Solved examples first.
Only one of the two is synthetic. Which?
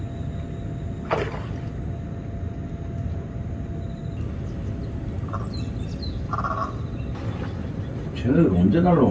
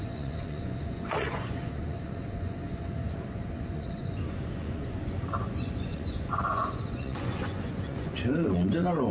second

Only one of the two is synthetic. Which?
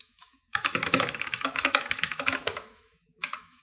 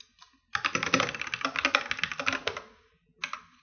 first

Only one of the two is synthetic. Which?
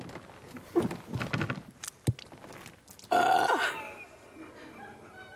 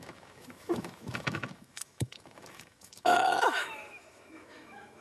second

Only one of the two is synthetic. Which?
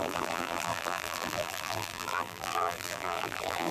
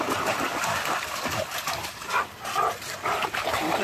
first